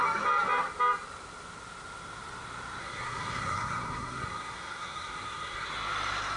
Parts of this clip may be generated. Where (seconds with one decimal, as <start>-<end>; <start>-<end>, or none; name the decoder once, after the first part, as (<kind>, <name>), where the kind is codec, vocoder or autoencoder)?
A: 2.8-5.7 (codec, SNAC)